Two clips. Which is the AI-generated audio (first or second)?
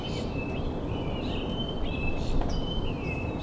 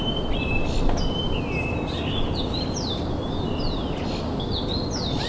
first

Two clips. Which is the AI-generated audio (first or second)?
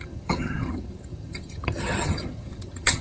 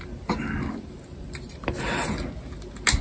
first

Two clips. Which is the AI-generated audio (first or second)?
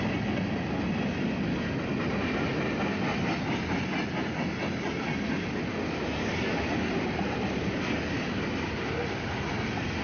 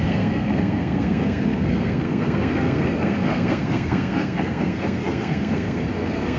second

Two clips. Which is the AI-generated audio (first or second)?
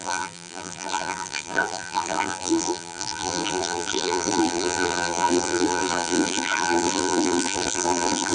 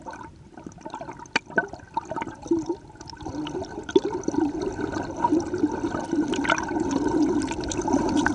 first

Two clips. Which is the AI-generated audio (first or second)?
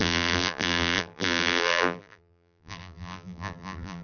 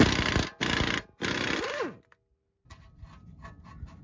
first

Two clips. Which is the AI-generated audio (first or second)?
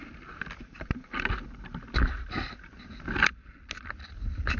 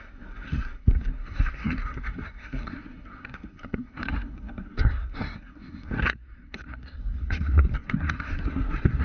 second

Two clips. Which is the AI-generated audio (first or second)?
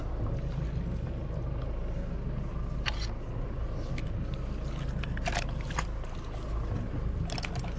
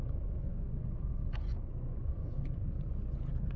second